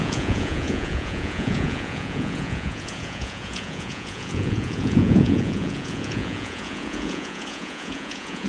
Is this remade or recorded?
remade